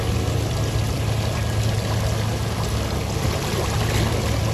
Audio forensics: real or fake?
real